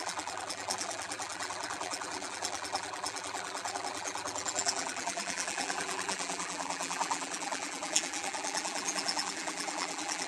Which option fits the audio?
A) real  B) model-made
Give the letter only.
B